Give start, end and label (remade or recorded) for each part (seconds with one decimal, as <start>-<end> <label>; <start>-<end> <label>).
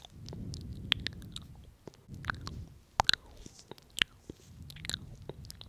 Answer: 0.0-5.7 recorded